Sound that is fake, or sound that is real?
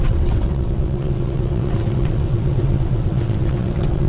fake